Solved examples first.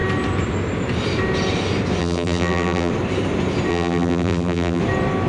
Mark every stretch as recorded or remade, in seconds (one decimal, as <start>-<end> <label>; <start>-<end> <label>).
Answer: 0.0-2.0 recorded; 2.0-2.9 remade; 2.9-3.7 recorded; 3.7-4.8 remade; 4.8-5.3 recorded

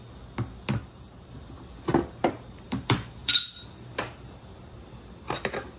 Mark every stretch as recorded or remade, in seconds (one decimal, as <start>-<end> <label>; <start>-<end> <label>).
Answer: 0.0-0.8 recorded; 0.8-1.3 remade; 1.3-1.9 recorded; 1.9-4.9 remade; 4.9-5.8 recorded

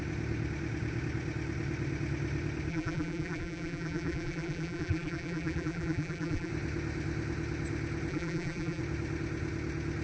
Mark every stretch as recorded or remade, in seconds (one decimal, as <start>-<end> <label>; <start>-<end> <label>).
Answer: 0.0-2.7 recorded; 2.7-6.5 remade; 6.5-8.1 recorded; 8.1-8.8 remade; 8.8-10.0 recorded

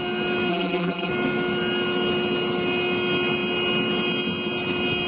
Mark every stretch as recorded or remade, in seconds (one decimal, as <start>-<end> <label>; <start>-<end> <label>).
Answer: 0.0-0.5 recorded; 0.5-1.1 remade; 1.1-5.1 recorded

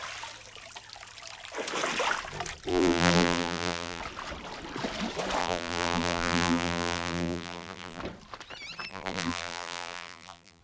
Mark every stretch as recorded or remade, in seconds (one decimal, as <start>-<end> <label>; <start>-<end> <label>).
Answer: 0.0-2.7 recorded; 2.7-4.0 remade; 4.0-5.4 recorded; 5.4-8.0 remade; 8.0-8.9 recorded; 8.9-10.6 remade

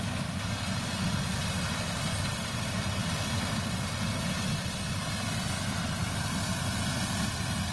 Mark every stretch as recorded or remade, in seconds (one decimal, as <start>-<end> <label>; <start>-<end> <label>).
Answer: 0.0-2.4 recorded; 2.4-3.1 remade; 3.1-7.7 recorded